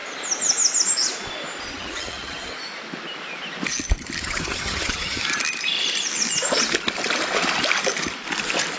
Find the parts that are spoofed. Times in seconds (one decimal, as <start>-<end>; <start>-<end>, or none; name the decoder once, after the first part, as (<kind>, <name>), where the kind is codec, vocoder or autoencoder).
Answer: 1.6-2.5 (vocoder, HiFi-GAN); 4.2-5.2